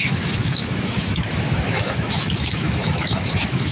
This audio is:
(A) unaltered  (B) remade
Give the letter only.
B